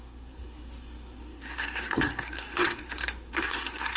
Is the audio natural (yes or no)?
no